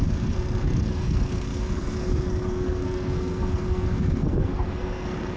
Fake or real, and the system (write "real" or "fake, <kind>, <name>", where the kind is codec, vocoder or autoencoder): fake, codec, SNAC